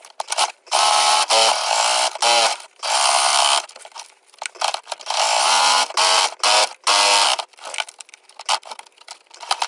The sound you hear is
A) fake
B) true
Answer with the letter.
B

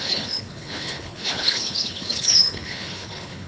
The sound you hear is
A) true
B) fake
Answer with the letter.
B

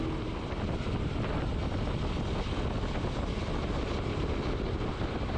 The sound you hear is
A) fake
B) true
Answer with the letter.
B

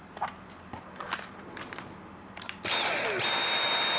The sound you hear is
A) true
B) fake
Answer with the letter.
A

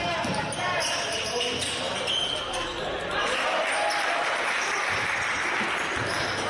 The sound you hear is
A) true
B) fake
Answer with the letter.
A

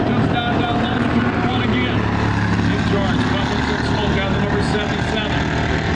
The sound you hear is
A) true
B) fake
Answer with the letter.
A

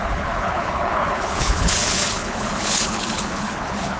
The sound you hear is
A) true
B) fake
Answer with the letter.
B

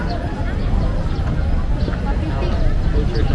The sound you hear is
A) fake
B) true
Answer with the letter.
B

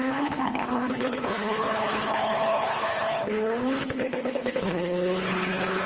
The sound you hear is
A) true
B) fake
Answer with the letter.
B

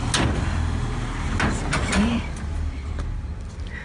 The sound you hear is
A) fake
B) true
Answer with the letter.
B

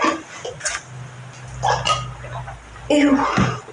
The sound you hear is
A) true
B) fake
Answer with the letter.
A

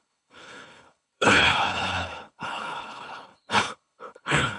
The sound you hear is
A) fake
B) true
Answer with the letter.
A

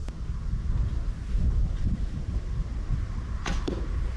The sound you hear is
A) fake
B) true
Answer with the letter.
B